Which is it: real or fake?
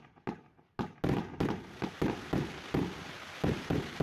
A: real